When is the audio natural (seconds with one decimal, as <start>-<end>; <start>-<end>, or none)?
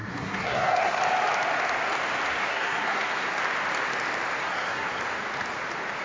1.0-2.4; 3.4-4.4; 5.0-6.0